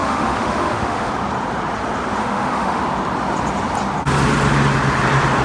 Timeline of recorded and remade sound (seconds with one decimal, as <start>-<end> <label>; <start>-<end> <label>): 0.0-1.1 remade; 1.1-2.2 recorded; 2.2-2.8 remade; 2.8-5.4 recorded